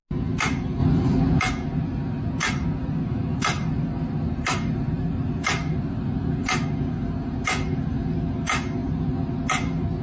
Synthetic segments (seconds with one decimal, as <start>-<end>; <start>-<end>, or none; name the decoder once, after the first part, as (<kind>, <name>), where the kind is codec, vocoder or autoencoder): 0.8-1.4 (vocoder, BigVGAN v2); 3.3-6.7; 8.8-9.4